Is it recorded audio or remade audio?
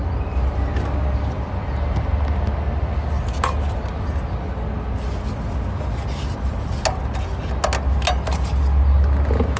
recorded